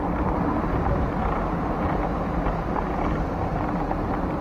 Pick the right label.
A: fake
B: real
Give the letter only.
B